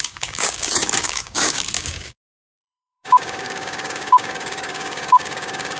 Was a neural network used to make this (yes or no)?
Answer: yes